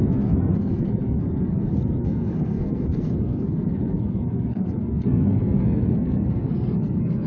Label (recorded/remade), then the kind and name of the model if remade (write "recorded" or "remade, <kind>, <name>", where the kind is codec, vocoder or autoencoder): remade, codec, SNAC